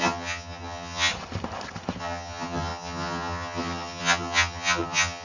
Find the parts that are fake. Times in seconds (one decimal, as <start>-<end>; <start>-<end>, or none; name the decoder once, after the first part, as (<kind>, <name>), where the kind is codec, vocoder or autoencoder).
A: 0.0-1.1 (vocoder, HiFi-GAN); 2.0-5.2